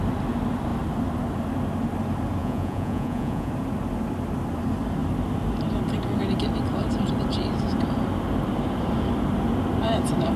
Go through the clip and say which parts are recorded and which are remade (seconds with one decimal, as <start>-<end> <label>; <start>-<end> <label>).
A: 0.0-2.4 recorded; 2.4-3.5 remade; 3.5-10.4 recorded